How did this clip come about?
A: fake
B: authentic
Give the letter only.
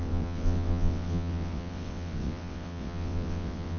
A